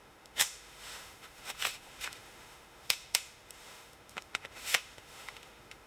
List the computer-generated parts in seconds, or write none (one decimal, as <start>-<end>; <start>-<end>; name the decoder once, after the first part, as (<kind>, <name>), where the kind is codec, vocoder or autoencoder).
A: 0.0-5.9 (autoencoder, DAC-VAE)